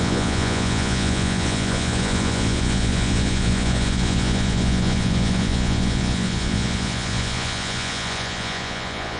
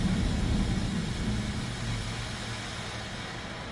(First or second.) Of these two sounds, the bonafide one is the second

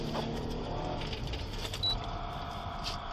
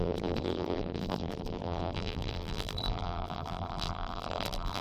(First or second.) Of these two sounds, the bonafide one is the first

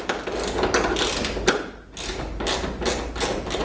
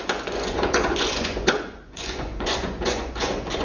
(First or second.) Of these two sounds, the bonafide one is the first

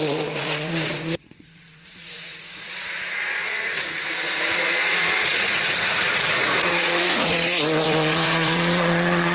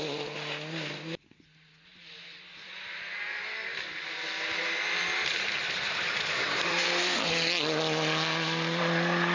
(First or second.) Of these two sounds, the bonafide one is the second